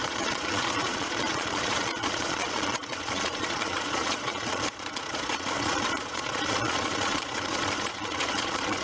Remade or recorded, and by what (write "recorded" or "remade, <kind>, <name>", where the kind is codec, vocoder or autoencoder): remade, vocoder, Vocos